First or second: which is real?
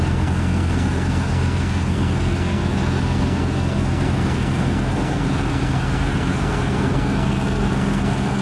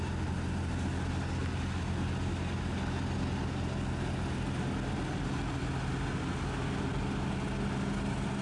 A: second